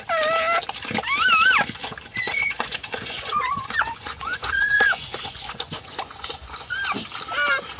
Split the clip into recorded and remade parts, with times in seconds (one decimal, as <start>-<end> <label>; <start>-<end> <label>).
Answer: 0.0-2.1 recorded; 2.1-6.8 remade; 6.8-7.8 recorded